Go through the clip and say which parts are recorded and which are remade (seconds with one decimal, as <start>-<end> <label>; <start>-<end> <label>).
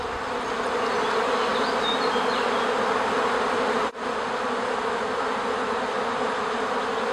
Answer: 0.0-7.1 recorded